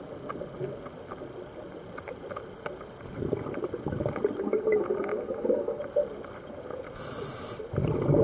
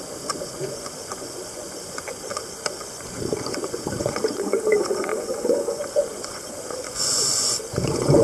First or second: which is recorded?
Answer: first